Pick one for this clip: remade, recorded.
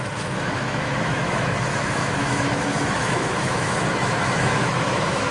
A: remade